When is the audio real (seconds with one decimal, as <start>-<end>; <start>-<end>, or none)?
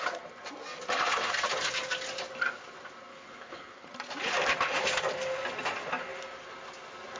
0.0-3.1; 3.9-7.2